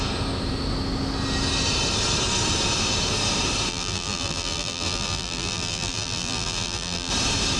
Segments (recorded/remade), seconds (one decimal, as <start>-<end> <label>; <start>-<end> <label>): 0.0-3.7 recorded; 3.7-7.1 remade; 7.1-7.6 recorded